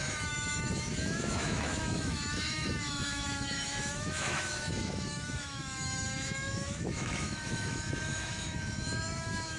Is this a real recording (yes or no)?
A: no